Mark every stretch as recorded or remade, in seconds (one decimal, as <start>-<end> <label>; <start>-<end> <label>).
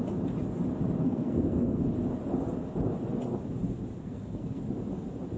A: 0.0-1.0 recorded; 1.0-1.8 remade; 1.8-4.0 recorded; 4.0-4.6 remade; 4.6-5.4 recorded